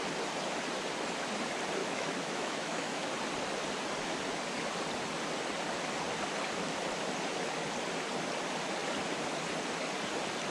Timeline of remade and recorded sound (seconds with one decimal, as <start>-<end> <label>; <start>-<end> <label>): 0.0-1.8 recorded; 1.8-3.1 remade; 3.1-10.5 recorded